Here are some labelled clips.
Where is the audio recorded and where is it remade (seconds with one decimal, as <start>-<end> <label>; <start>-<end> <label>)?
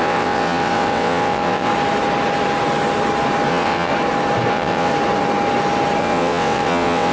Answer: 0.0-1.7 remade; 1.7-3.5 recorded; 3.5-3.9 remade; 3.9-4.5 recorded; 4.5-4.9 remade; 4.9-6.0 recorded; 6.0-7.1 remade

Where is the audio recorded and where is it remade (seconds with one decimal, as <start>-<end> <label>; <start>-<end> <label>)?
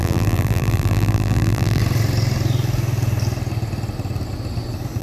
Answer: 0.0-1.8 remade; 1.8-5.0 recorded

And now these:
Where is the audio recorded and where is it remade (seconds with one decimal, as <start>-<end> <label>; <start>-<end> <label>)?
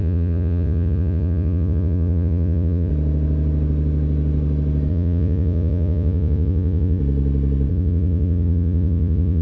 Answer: 0.0-2.9 remade; 2.9-4.9 recorded; 4.9-7.0 remade; 7.0-7.7 recorded; 7.7-9.4 remade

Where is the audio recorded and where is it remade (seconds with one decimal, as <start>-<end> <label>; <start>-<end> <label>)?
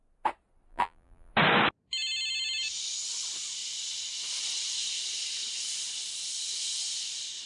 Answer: 0.0-0.7 recorded; 0.7-1.3 remade; 1.3-7.5 recorded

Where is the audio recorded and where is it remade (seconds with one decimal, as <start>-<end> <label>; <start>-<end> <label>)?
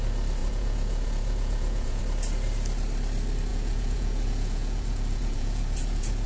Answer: 0.0-0.4 recorded; 0.4-2.0 remade; 2.0-3.5 recorded; 3.5-6.3 remade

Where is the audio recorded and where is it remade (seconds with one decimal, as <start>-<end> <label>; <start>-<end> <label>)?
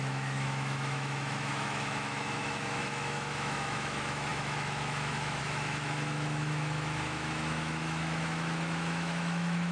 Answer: 0.0-9.7 remade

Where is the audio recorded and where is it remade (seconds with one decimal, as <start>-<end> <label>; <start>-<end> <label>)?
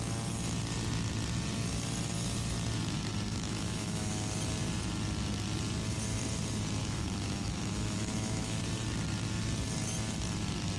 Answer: 0.0-3.3 recorded; 3.3-4.1 remade; 4.1-6.8 recorded; 6.8-8.6 remade; 8.6-10.8 recorded